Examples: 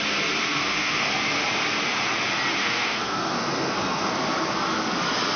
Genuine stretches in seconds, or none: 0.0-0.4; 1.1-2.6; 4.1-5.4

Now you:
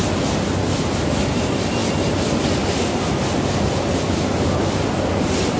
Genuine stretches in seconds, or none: 0.0-5.6

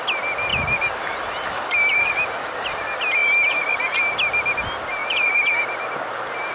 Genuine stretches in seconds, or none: 0.0-0.5; 2.8-6.5

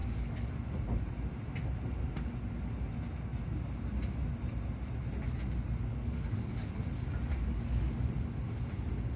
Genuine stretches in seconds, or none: 0.5-5.9; 6.8-7.3; 8.1-9.2